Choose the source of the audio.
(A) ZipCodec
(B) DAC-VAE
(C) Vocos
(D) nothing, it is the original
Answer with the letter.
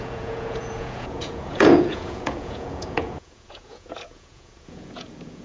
C